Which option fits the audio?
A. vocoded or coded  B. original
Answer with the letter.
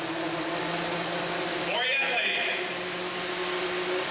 B